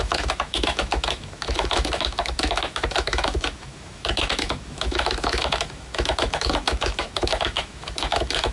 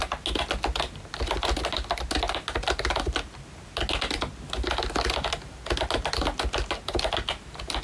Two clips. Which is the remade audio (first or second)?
first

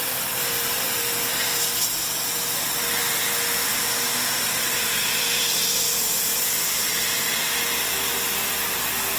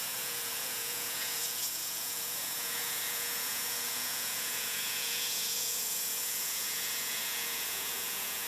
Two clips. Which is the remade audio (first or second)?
second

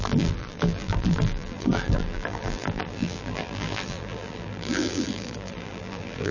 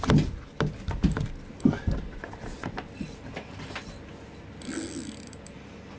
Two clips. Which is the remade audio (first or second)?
first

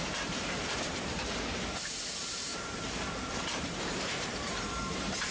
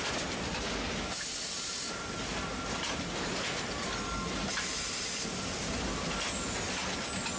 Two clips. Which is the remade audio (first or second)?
first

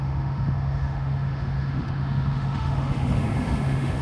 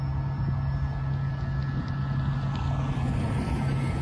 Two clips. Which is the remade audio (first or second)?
first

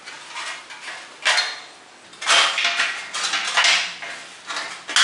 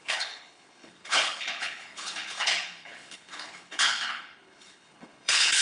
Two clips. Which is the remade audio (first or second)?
second